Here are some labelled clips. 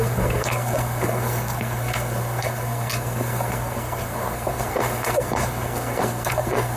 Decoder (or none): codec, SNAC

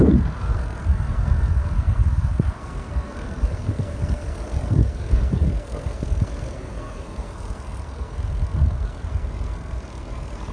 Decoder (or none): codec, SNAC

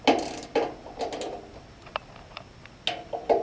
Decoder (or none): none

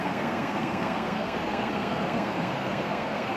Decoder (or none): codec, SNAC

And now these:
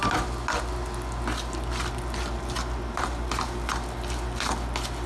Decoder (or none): none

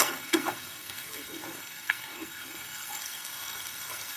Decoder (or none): codec, SNAC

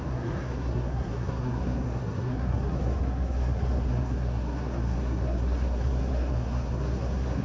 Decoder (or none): codec, SNAC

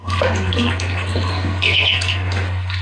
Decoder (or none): codec, SNAC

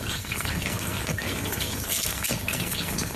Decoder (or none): codec, SNAC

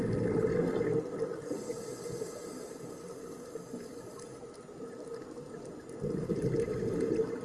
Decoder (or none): none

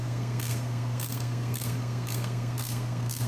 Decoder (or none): codec, SNAC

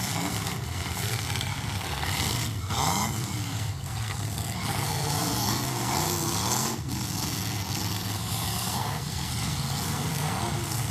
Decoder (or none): codec, SNAC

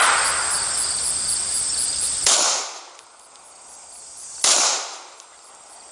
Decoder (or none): none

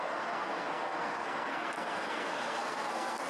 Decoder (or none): codec, SNAC